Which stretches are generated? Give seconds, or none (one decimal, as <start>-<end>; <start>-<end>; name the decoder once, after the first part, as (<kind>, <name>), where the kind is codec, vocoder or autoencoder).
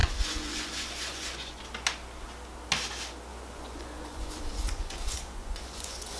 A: 0.0-1.6 (vocoder, Vocos); 3.3-6.2